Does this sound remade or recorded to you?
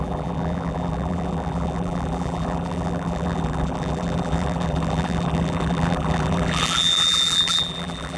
remade